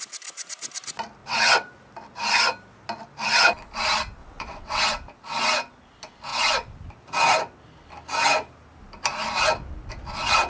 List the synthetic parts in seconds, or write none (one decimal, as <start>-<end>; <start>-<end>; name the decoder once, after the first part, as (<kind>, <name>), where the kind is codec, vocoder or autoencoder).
1.2-1.7 (vocoder, WaveNeXt); 4.2-4.8